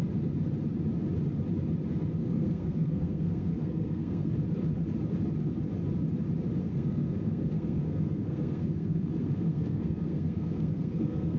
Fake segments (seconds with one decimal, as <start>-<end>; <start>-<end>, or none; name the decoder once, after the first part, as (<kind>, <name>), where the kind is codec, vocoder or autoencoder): 2.2-4.3 (codec, SNAC); 6.6-11.4